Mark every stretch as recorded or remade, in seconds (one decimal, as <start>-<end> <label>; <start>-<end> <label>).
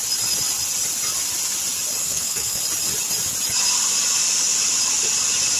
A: 0.0-2.0 recorded; 2.0-2.6 remade; 2.6-5.6 recorded